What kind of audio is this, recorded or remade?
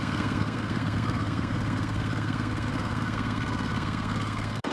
remade